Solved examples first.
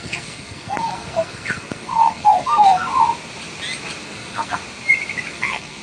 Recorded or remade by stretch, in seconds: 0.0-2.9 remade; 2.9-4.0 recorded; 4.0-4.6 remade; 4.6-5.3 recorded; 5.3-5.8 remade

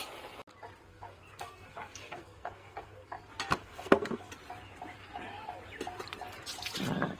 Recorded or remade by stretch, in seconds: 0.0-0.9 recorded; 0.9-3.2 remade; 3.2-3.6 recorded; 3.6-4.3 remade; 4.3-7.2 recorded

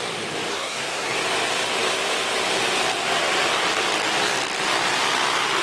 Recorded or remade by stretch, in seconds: 0.0-0.5 recorded; 0.5-1.2 remade; 1.2-5.6 recorded

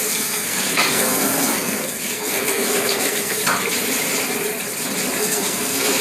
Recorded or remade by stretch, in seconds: 0.0-3.4 remade; 3.4-5.2 recorded; 5.2-6.0 remade

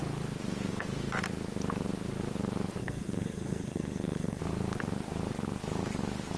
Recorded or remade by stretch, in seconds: 0.0-2.8 recorded; 2.8-4.4 remade; 4.4-6.4 recorded

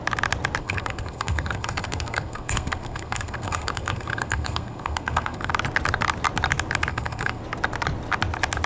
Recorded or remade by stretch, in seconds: 0.0-0.6 recorded; 0.6-5.5 remade; 5.5-6.9 recorded; 6.9-7.4 remade; 7.4-8.7 recorded

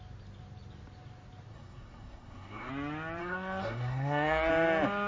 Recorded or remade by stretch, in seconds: 0.0-1.5 recorded; 1.5-2.7 remade; 2.7-3.2 recorded; 3.2-4.5 remade; 4.5-5.1 recorded